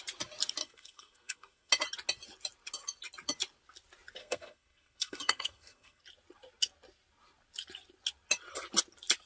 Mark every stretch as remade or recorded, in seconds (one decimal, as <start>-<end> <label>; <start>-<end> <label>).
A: 0.0-0.6 recorded; 0.6-1.7 remade; 1.7-4.2 recorded; 4.2-6.0 remade; 6.0-9.3 recorded